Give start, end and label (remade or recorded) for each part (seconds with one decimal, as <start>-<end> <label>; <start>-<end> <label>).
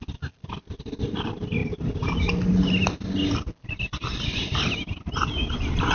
0.0-5.9 recorded